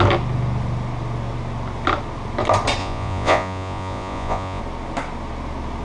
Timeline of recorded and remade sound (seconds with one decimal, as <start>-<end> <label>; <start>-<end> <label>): 0.0-2.8 recorded; 2.8-4.6 remade; 4.6-5.8 recorded